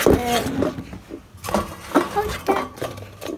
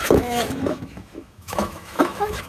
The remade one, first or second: second